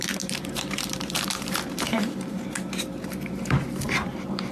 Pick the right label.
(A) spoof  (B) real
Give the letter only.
A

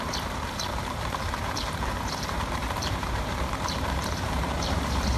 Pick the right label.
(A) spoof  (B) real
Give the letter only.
A